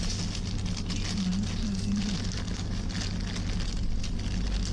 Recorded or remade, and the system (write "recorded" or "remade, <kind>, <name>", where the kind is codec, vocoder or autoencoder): recorded